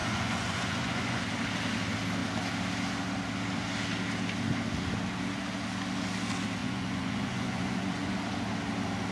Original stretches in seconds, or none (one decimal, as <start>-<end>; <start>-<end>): 1.2-6.6; 8.1-9.1

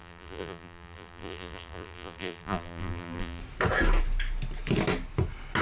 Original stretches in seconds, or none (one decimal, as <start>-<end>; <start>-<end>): 3.4-5.6

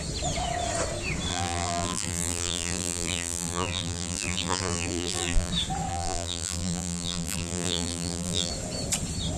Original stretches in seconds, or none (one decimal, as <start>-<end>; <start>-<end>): 0.0-1.3; 5.5-5.9; 8.5-9.4

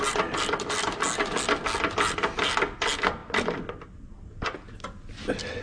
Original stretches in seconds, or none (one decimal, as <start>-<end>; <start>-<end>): 0.0-5.6